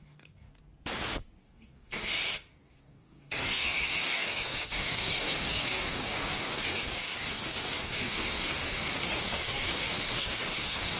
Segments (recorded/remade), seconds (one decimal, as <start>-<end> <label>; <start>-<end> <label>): 0.0-0.6 remade; 0.6-1.4 recorded; 1.4-11.0 remade